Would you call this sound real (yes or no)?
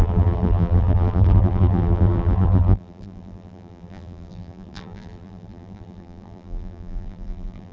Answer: no